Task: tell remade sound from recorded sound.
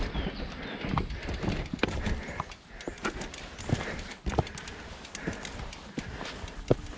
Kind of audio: recorded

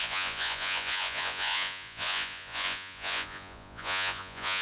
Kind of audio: remade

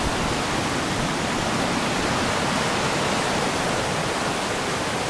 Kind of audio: recorded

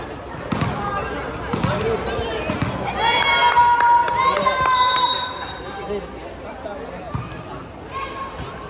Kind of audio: recorded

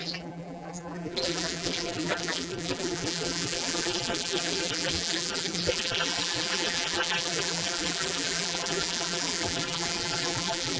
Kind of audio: remade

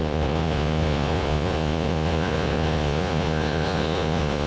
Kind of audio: remade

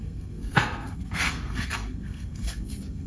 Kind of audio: remade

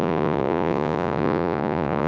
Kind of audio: remade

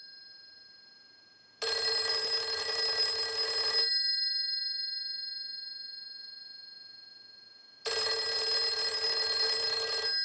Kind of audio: recorded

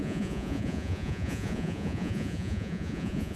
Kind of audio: remade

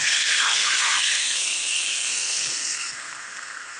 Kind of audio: remade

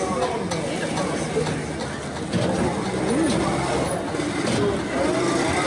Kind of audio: recorded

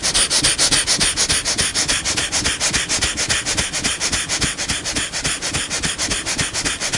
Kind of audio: recorded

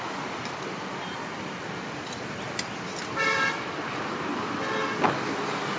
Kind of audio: recorded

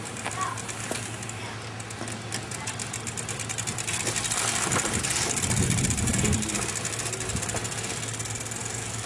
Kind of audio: recorded